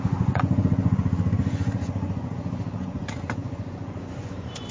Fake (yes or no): yes